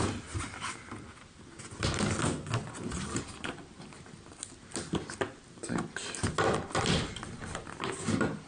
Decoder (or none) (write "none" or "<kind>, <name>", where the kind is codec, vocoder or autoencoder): none